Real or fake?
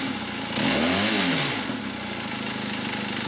real